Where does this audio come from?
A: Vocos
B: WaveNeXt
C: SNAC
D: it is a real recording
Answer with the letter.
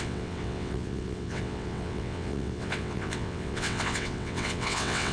B